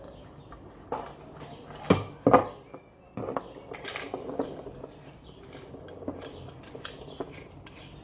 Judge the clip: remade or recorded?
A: recorded